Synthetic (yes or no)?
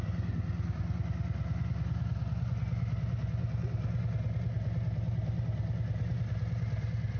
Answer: no